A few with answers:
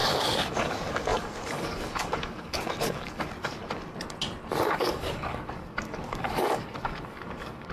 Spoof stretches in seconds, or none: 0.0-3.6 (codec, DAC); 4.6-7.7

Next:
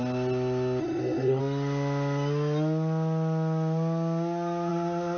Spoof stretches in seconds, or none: 0.8-1.4 (codec, SNAC)

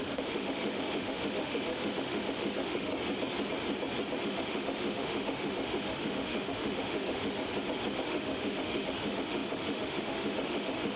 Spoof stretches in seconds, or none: 0.0-2.9 (autoencoder, DAC-VAE); 4.2-7.4; 7.9-11.0

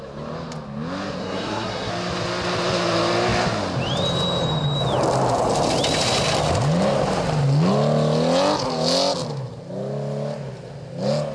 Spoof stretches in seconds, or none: 1.2-1.9 (codec, SNAC)

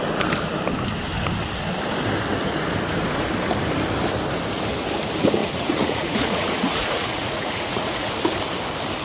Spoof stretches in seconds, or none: 5.4-8.1 (vocoder, Vocos)

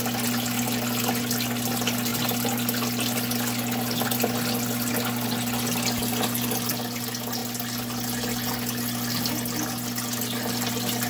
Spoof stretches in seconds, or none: none

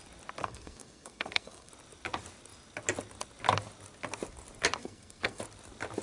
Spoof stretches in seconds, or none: 0.4-1.7 (codec, SNAC); 4.8-5.4

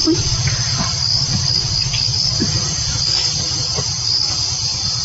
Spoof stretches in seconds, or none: none